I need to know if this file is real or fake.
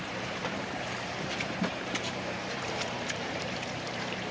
fake